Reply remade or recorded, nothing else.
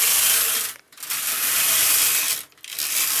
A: recorded